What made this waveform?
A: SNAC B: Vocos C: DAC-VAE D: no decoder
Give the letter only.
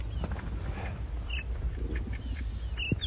D